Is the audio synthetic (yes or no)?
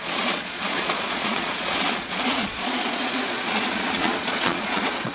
yes